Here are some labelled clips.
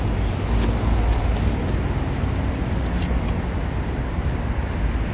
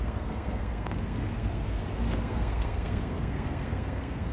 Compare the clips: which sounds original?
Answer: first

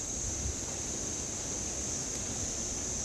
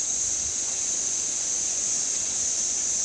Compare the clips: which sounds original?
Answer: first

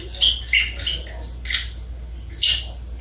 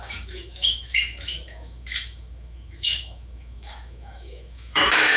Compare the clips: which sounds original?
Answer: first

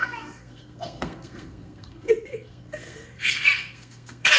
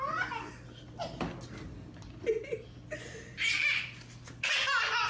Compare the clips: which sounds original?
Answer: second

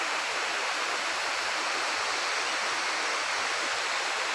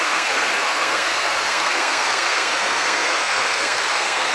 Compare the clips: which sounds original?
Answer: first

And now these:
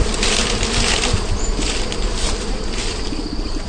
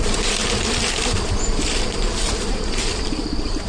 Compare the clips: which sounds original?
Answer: first